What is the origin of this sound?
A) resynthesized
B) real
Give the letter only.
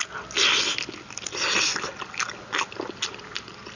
B